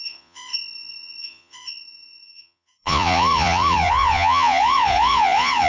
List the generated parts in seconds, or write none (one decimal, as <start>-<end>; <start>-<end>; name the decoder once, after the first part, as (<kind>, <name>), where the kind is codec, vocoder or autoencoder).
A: 0.0-5.7 (vocoder, Vocos)

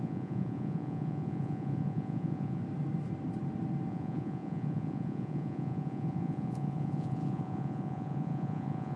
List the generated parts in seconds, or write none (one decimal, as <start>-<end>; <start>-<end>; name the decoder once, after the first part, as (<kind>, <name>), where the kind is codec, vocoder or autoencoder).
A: 0.0-2.6 (vocoder, Vocos); 3.9-9.0